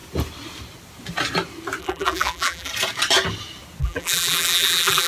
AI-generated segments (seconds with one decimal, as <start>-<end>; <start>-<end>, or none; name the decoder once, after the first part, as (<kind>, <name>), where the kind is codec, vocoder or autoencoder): 1.8-2.7 (vocoder, BigVGAN v2); 3.8-5.1